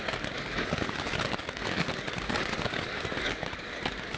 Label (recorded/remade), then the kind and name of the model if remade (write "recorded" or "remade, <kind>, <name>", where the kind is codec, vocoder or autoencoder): remade, codec, DAC